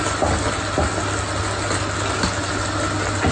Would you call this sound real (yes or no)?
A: yes